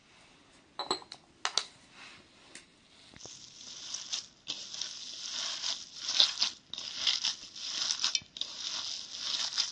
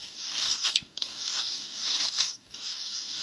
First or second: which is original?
first